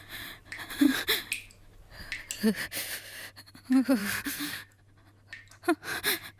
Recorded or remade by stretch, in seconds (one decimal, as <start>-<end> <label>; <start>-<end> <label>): 0.0-4.0 recorded; 4.0-4.8 remade; 4.8-6.4 recorded